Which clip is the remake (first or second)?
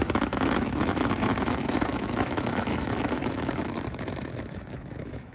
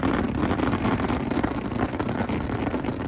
first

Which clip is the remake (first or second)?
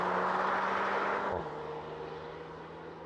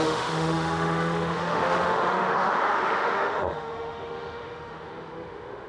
second